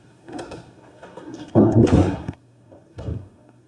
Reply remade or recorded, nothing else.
remade